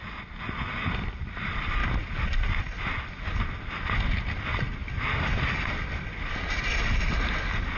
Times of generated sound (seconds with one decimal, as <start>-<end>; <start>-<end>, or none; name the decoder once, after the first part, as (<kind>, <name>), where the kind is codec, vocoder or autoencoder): none